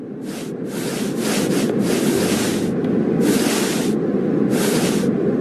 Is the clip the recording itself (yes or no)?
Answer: yes